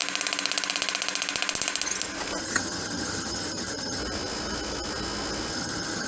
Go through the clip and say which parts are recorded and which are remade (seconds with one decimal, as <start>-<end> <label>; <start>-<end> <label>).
0.0-2.4 recorded; 2.4-4.0 remade; 4.0-5.5 recorded; 5.5-6.1 remade